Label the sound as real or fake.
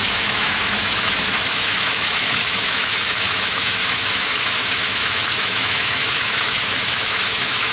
fake